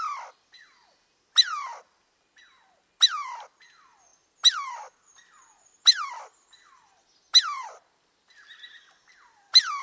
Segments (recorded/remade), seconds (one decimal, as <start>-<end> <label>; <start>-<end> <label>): 0.0-9.8 recorded